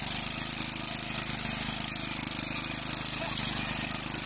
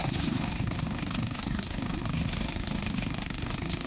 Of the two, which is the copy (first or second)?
second